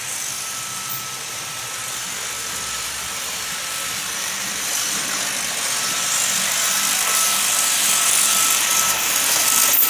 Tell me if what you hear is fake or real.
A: fake